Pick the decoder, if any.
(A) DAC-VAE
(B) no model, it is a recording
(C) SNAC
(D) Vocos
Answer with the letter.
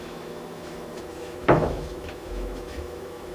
A